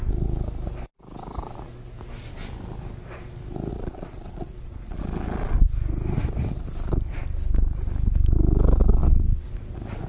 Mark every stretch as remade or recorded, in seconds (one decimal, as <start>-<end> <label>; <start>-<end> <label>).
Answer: 0.0-3.7 recorded; 3.7-5.0 remade; 5.0-9.0 recorded; 9.0-9.5 remade; 9.5-10.1 recorded